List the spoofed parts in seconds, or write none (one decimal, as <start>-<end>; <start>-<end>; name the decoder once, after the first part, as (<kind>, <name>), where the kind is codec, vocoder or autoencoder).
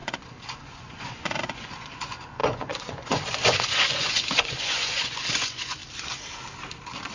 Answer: 0.0-5.8 (vocoder, Vocos)